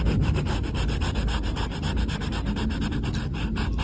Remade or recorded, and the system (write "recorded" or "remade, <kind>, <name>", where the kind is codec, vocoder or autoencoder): recorded